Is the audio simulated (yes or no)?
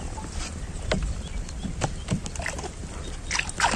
no